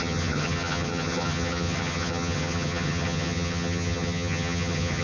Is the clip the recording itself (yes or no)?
no